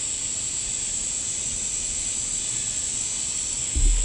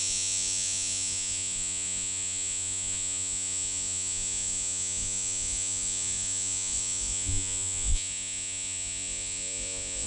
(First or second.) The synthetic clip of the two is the second